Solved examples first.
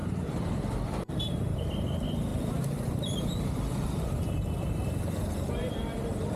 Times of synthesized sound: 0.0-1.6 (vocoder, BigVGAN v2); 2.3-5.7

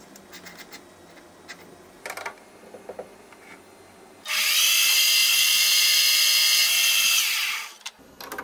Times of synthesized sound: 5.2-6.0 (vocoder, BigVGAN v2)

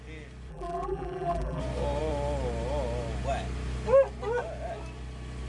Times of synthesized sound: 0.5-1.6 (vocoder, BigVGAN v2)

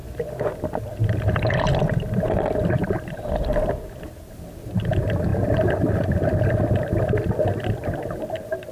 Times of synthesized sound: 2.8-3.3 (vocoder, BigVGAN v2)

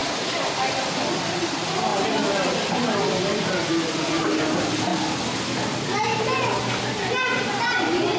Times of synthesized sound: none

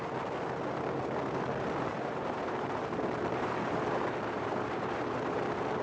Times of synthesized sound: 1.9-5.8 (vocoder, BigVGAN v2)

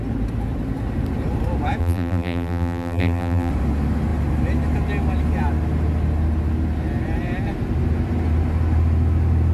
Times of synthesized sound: 1.8-3.5 (vocoder, BigVGAN v2)

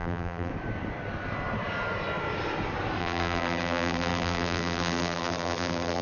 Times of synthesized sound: 0.0-0.5 (vocoder, BigVGAN v2); 3.0-6.0